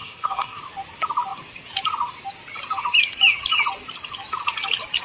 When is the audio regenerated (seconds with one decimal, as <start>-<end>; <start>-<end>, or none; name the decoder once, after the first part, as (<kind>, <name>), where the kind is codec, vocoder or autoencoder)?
0.0-0.6 (codec, SNAC)